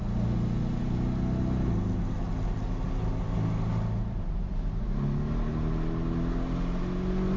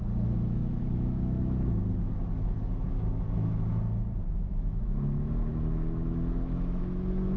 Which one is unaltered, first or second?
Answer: first